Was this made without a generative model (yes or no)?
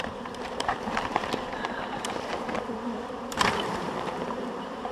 no